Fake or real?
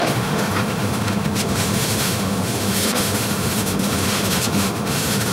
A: fake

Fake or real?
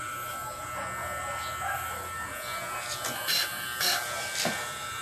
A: real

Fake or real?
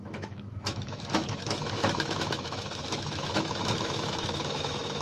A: fake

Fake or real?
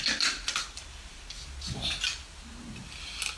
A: real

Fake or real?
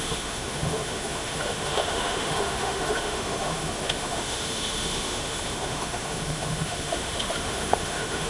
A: fake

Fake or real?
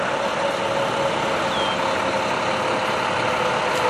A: real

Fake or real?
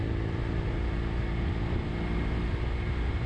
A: real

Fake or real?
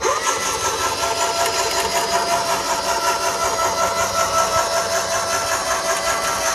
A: real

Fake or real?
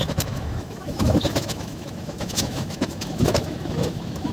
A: fake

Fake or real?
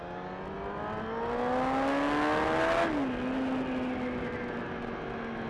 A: real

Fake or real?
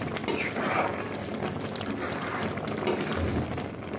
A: real